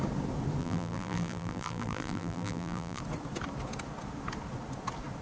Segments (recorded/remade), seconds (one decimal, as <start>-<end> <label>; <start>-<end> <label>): 0.0-0.6 recorded; 0.6-3.0 remade; 3.0-5.2 recorded